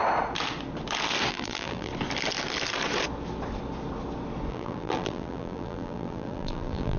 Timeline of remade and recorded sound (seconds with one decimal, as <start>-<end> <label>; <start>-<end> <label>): 0.0-1.3 recorded; 1.3-1.9 remade; 1.9-4.5 recorded; 4.5-7.0 remade